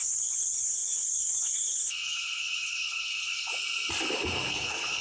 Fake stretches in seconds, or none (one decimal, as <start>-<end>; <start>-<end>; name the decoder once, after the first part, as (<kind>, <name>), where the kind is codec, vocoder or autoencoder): 0.0-3.5 (codec, HILCodec); 4.5-5.0